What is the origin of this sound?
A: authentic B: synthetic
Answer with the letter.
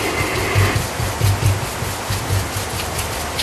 A